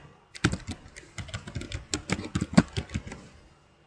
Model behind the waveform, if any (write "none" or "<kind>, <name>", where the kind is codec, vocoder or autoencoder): none